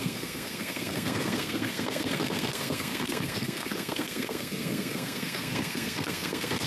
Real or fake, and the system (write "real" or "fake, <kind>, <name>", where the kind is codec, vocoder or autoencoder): fake, codec, SNAC